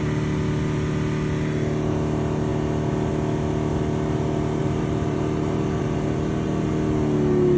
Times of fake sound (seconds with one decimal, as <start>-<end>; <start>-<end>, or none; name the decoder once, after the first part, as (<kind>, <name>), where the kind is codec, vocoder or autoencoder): 4.6-6.7 (vocoder, BigVGAN v2)